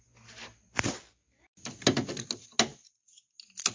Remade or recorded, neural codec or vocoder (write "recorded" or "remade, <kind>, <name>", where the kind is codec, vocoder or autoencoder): recorded